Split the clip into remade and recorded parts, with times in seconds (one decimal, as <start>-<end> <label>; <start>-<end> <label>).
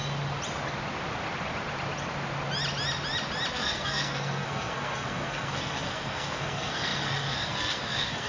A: 0.0-3.5 recorded; 3.5-8.3 remade